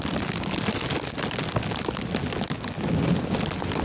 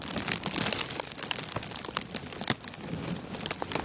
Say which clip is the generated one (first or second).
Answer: second